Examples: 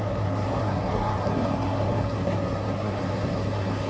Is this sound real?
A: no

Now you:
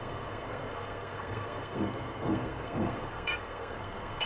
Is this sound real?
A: no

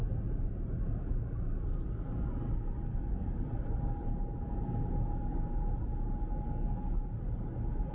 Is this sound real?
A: yes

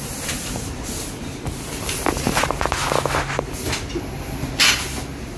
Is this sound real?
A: yes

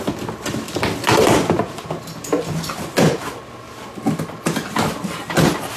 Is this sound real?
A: yes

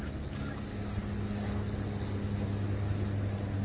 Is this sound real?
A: yes